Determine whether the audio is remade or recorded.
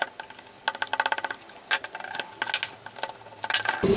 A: recorded